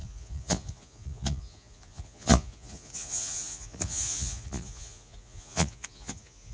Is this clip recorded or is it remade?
remade